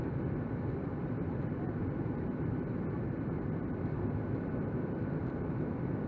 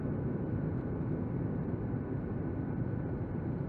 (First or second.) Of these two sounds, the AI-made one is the first